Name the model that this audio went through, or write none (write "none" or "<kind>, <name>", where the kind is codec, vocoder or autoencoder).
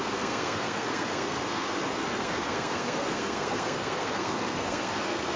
codec, SNAC